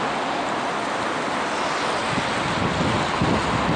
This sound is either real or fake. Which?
real